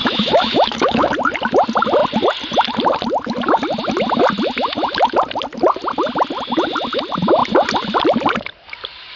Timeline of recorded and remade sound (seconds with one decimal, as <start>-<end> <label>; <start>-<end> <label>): 0.0-1.1 remade; 1.1-9.2 recorded